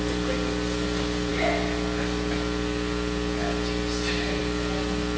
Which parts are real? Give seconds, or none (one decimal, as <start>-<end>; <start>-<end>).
0.0-5.2